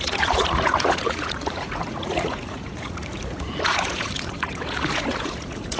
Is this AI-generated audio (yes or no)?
yes